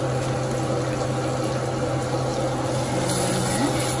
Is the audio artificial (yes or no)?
no